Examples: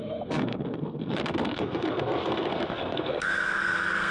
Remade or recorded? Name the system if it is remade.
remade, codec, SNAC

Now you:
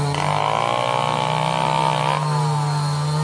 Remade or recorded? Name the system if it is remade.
recorded